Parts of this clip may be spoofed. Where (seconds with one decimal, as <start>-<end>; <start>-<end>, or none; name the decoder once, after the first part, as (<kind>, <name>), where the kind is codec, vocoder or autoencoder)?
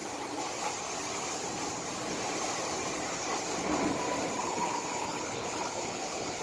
4.4-6.4 (codec, HILCodec)